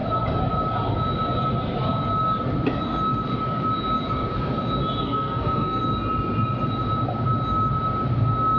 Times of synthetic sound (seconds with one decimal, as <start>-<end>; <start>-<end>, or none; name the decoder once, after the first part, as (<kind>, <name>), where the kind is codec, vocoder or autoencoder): 5.0-5.8 (codec, SNAC)